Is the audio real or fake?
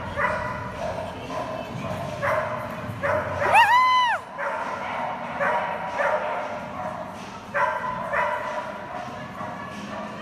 real